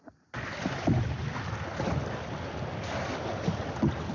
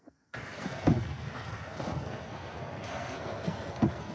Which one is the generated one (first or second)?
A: second